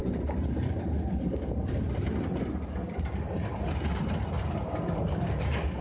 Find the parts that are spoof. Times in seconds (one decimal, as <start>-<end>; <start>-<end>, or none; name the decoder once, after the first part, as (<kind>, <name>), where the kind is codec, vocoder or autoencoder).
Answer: none